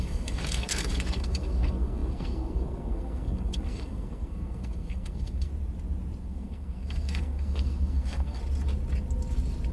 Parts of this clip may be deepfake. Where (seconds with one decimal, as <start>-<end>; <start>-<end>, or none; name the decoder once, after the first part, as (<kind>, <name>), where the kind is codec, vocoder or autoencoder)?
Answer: 0.0-5.5 (codec, SNAC); 6.2-8.4